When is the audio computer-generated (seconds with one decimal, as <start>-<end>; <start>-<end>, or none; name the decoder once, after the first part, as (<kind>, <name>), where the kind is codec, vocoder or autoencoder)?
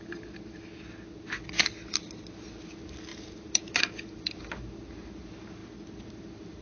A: 3.1-3.8 (vocoder, BigVGAN v2)